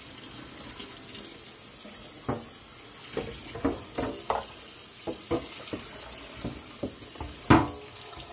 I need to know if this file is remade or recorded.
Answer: recorded